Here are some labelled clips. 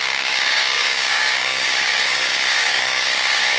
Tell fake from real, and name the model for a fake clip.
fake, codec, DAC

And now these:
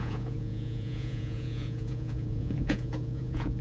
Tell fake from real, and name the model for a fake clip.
fake, vocoder, Vocos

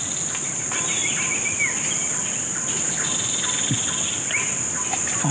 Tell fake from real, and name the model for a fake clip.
real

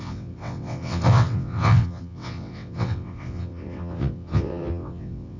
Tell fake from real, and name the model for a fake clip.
fake, vocoder, WaveNeXt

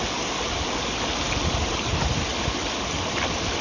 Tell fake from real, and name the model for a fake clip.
real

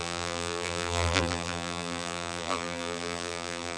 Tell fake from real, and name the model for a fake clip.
fake, vocoder, BigVGAN v2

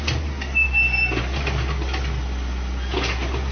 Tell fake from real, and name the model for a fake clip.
real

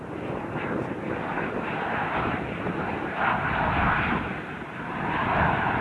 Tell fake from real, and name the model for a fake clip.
real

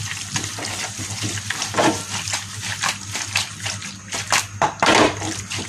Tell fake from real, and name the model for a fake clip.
fake, vocoder, BigVGAN v2